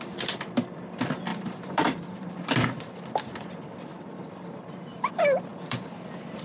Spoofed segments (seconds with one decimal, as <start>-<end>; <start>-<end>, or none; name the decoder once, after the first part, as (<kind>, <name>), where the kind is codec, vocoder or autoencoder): 1.3-5.1 (vocoder, BigVGAN v2); 5.5-6.4